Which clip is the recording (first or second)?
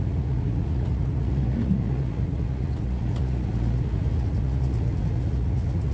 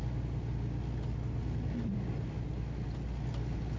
second